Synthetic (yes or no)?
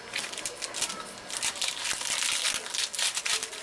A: no